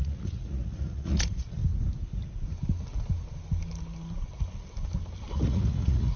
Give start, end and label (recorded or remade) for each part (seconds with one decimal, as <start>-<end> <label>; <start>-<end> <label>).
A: 0.0-1.6 remade; 1.6-5.3 recorded; 5.3-6.2 remade